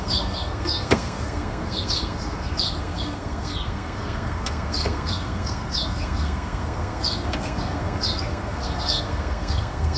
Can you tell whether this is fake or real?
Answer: fake